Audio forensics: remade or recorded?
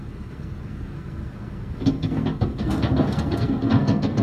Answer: remade